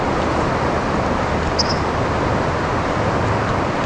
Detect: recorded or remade recorded